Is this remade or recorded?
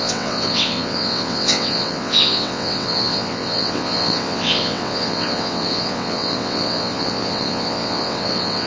remade